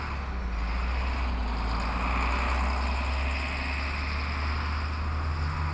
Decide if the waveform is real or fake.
real